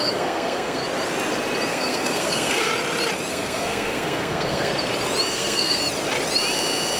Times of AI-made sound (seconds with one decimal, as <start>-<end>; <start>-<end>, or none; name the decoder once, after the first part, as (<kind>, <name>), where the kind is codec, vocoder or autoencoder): 0.0-0.8 (codec, SNAC); 1.7-2.7; 3.3-4.7; 5.3-5.8